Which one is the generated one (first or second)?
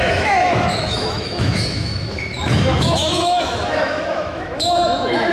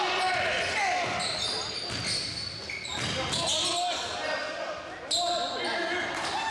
first